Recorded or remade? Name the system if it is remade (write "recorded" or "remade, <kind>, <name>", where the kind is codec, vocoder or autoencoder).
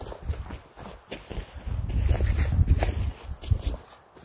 recorded